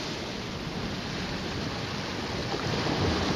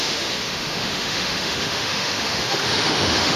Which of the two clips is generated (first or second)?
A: second